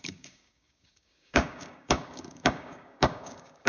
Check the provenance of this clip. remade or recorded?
remade